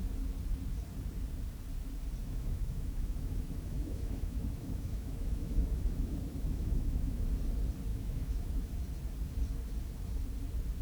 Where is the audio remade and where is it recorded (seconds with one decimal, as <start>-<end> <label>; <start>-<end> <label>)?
0.0-2.2 recorded; 2.2-7.2 remade; 7.2-7.9 recorded; 7.9-8.7 remade; 8.7-10.8 recorded